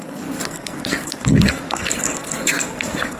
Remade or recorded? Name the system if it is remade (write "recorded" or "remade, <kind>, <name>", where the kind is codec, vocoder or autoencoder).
remade, codec, SNAC